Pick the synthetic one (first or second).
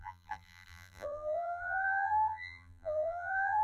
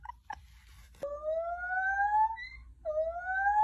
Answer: first